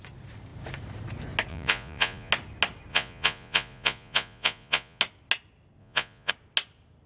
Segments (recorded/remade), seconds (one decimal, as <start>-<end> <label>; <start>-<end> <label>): 0.0-1.5 recorded; 1.5-2.3 remade; 2.3-2.9 recorded; 2.9-5.0 remade; 5.0-5.8 recorded; 5.8-6.3 remade; 6.3-7.1 recorded